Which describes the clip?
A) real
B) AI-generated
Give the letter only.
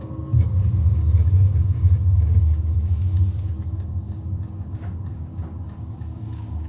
B